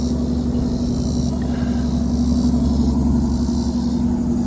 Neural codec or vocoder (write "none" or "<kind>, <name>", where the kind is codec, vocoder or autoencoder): none